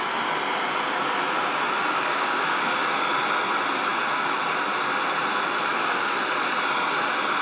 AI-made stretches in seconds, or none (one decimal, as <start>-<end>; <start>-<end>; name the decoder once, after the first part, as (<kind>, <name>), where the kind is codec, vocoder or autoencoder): 1.8-3.1 (codec, DAC); 5.7-6.2